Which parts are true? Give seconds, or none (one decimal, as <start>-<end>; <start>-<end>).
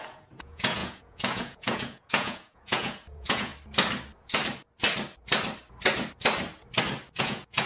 3.5-7.2